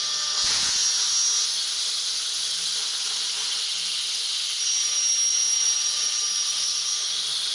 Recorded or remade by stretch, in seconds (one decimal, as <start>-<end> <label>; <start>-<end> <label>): 0.0-0.8 remade; 0.8-5.3 recorded; 5.3-6.2 remade; 6.2-7.5 recorded